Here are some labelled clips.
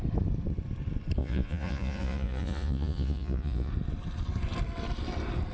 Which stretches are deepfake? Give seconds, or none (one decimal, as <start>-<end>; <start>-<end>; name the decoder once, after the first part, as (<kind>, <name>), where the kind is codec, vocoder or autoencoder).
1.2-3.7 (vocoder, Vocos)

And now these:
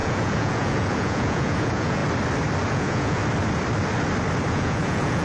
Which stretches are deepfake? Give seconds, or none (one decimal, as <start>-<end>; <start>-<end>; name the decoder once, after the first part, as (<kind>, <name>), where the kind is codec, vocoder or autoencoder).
0.0-2.0 (vocoder, Vocos); 2.7-3.2; 4.5-5.2

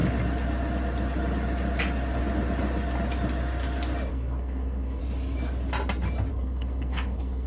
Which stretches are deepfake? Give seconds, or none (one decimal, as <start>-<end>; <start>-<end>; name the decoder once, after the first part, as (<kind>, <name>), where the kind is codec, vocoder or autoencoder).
4.1-5.0 (codec, SNAC); 6.3-7.5

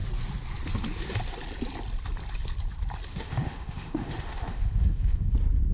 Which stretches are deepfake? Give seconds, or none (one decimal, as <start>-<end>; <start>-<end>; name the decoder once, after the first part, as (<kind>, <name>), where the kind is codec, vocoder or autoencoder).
3.1-5.3 (autoencoder, DAC-VAE)

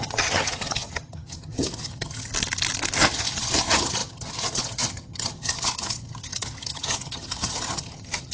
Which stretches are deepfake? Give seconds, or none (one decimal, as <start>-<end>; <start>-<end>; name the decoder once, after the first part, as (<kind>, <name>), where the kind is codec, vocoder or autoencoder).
0.0-2.3 (vocoder, HiFi-GAN); 3.0-8.3

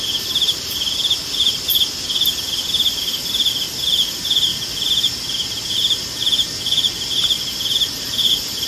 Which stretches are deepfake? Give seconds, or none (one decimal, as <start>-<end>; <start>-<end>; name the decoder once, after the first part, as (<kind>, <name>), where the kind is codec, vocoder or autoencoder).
4.5-5.1 (vocoder, BigVGAN v2)

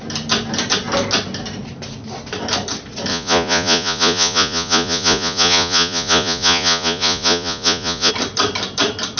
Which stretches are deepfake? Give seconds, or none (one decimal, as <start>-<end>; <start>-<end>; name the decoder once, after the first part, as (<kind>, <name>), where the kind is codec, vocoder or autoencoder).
3.1-8.1 (vocoder, Vocos)

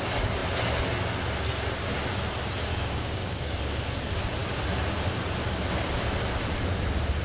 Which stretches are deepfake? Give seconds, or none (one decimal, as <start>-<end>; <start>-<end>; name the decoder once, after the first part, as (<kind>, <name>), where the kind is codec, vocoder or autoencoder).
2.7-3.6 (codec, DAC)